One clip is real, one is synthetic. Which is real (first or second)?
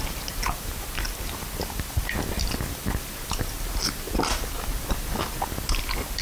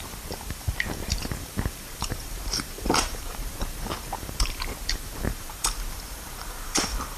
first